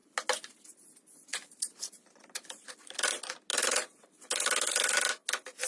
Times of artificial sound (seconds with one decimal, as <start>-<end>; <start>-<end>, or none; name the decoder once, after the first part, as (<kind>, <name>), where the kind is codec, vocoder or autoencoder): 1.3-3.1 (vocoder, BigVGAN v2); 3.5-4.3